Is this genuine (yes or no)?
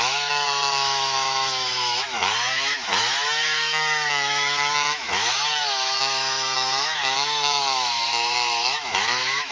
no